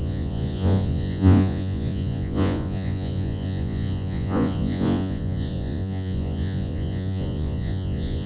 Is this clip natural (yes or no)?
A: no